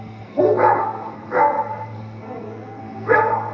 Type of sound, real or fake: fake